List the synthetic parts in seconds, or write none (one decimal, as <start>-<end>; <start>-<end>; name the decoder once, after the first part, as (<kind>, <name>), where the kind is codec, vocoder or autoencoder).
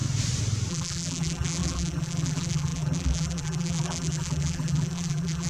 0.7-5.5 (vocoder, BigVGAN v2)